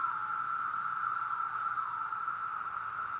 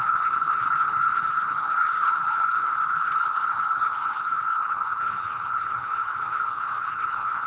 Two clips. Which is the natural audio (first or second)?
first